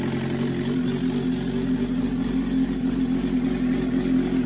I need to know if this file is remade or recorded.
recorded